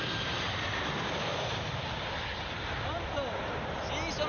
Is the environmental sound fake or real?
real